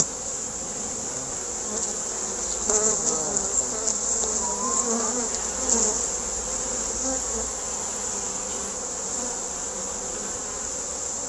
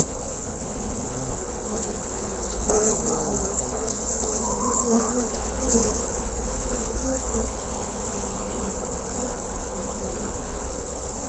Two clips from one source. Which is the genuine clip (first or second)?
first